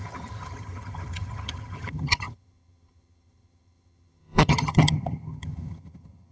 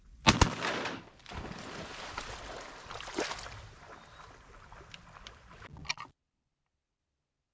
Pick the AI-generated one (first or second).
first